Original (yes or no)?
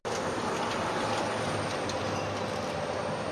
yes